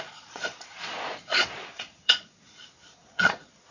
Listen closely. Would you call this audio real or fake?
fake